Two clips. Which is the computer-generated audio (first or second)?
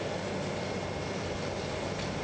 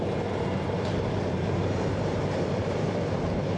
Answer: second